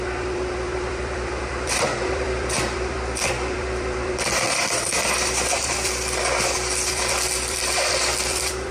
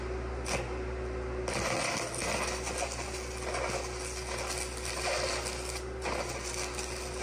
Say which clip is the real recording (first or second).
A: second